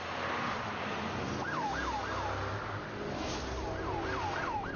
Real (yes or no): yes